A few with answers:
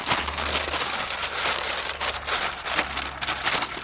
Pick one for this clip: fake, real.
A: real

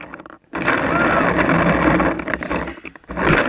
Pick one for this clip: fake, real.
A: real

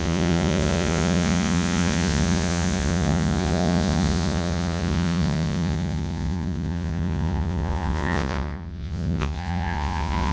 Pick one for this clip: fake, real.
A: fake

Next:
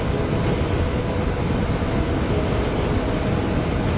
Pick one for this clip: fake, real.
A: real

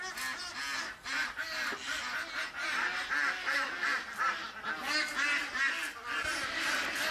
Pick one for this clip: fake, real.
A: real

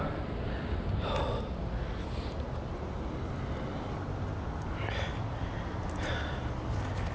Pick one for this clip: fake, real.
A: real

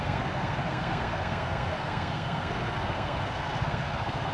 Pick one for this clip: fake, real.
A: fake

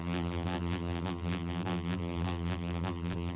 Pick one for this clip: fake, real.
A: fake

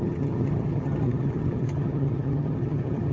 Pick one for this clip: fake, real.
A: fake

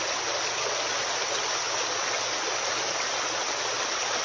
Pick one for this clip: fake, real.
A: real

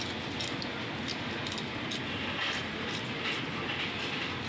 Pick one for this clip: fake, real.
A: real